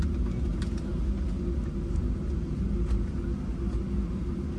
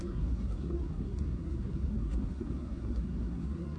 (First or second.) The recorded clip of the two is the first